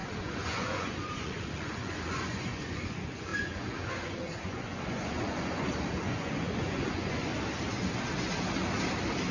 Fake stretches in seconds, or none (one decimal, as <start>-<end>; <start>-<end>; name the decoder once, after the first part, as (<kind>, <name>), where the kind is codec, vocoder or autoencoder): 0.0-7.3 (vocoder, Vocos)